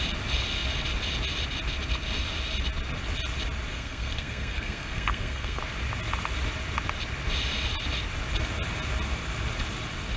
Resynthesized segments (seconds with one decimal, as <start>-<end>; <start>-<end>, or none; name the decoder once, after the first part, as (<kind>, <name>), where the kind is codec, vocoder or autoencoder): 3.7-5.6 (codec, SNAC)